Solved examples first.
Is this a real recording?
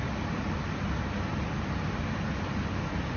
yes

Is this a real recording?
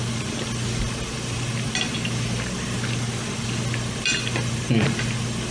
yes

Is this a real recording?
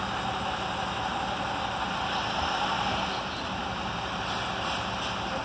yes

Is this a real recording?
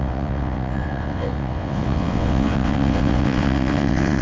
no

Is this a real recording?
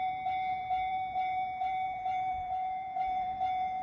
no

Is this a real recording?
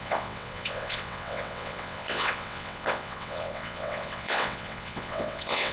no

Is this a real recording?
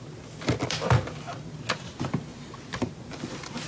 yes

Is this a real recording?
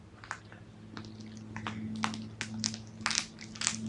yes